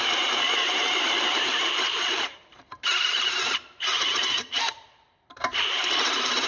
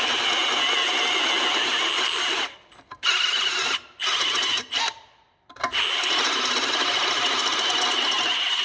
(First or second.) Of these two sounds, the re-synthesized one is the first